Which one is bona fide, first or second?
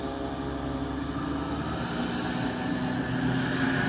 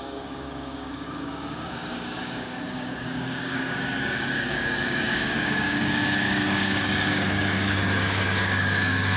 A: first